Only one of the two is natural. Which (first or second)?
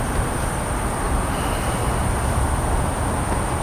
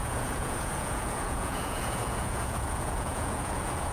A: first